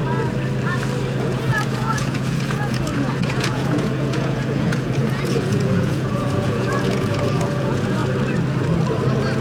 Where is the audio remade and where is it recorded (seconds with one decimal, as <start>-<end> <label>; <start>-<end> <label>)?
0.0-1.2 recorded; 1.2-8.0 remade; 8.0-9.4 recorded